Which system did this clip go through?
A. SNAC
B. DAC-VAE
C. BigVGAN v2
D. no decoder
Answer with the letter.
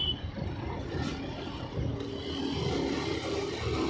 D